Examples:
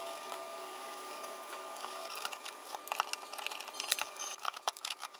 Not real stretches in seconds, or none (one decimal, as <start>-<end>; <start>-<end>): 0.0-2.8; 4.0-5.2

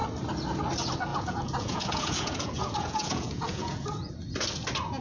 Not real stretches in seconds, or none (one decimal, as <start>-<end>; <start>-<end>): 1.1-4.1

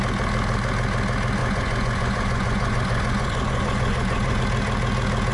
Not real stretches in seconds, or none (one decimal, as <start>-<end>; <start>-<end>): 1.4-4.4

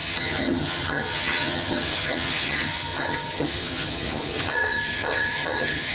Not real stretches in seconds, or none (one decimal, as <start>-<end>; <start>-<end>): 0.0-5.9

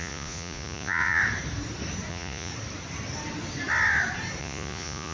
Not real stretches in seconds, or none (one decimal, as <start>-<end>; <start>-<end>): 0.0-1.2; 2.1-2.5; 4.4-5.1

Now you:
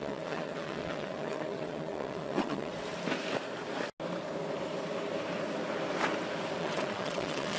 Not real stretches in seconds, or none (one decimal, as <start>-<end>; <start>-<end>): 0.0-2.7; 6.6-7.6

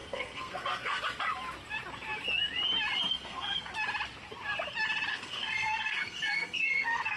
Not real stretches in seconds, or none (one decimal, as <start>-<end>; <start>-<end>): 0.0-1.0; 3.1-3.7; 5.1-7.2

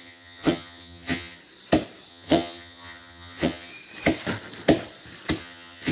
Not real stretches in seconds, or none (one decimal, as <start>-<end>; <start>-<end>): 0.0-1.4; 2.1-3.7; 5.4-5.9